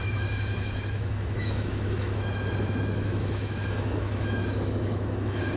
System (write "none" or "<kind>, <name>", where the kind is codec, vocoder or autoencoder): autoencoder, DAC-VAE